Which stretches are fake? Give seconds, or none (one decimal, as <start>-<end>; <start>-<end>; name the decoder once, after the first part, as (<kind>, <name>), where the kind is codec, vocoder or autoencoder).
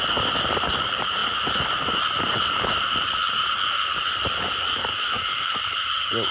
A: 4.9-5.6 (autoencoder, DAC-VAE)